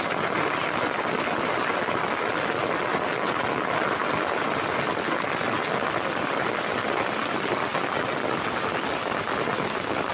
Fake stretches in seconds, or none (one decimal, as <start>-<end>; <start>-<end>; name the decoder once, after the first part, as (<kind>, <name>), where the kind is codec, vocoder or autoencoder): none